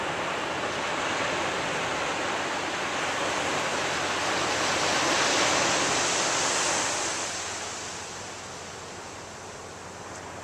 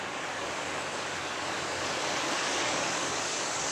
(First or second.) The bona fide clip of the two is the first